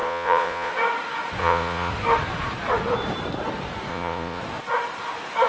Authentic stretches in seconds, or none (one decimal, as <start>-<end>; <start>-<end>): 0.7-1.4; 1.9-3.9; 4.4-5.5